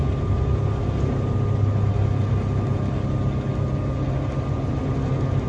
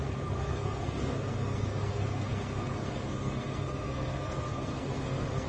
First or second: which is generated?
second